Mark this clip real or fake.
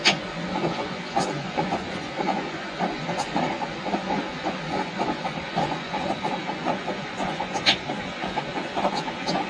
fake